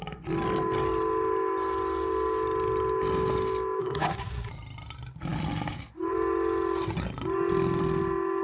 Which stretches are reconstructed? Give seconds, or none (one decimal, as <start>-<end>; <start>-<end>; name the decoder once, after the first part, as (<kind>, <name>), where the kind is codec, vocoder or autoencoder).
3.8-4.5 (codec, SNAC)